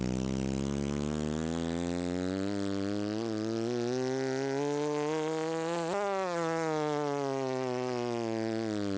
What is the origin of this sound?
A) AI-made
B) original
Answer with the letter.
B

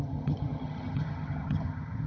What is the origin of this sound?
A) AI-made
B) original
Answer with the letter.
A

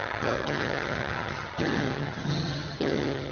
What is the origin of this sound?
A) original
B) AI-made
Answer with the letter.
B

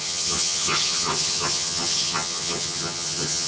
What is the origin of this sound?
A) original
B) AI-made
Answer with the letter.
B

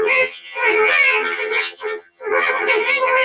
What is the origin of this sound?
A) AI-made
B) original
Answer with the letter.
A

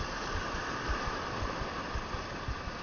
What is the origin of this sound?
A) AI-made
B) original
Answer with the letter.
B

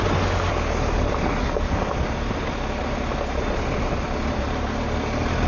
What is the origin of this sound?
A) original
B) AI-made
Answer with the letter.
A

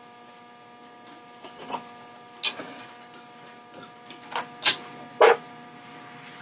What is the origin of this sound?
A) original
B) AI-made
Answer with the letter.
A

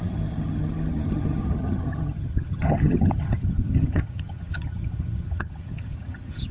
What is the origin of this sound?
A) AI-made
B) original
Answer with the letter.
A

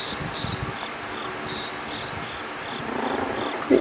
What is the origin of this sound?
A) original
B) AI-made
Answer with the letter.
A